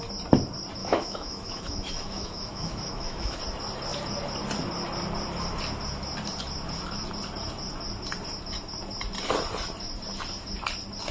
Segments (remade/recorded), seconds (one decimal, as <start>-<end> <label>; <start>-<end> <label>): 0.0-0.8 recorded; 0.8-3.4 remade; 3.4-11.1 recorded

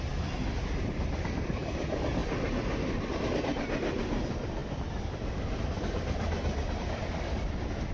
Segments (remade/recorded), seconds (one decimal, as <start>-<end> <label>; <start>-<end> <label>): 0.0-7.9 recorded

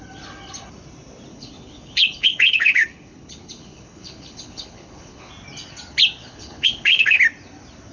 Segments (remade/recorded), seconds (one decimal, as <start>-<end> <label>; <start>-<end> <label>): 0.0-1.3 recorded; 1.3-5.3 remade; 5.3-6.2 recorded; 6.2-7.2 remade; 7.2-7.9 recorded

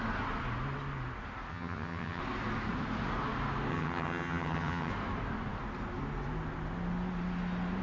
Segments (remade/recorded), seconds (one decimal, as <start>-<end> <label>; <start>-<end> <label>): 0.0-1.5 recorded; 1.5-2.2 remade; 2.2-3.7 recorded; 3.7-4.9 remade; 4.9-7.8 recorded

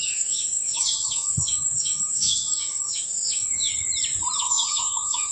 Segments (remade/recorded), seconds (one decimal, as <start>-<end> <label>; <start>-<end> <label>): 0.0-3.7 remade; 3.7-4.4 recorded; 4.4-5.3 remade

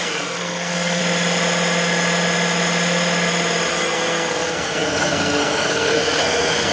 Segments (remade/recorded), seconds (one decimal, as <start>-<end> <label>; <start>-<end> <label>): 0.0-1.0 remade; 1.0-3.7 recorded; 3.7-6.7 remade

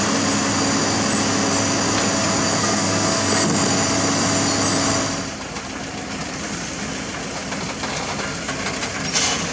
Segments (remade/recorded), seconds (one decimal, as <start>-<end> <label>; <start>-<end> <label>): 0.0-2.6 recorded; 2.6-3.3 remade; 3.3-9.5 recorded

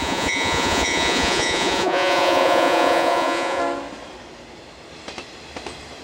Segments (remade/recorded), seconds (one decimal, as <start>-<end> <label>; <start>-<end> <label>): 0.0-3.6 remade; 3.6-6.0 recorded